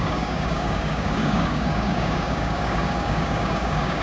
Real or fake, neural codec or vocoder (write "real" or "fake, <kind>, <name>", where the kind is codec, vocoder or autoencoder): fake, codec, DAC